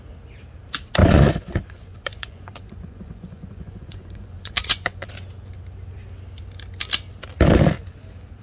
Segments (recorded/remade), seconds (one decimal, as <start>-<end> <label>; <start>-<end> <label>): 0.0-1.0 recorded; 1.0-5.1 remade; 5.1-8.4 recorded